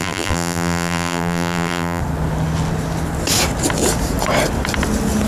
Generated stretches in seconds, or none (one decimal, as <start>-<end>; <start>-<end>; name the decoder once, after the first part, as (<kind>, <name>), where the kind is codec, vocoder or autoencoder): 0.0-2.0 (vocoder, BigVGAN v2)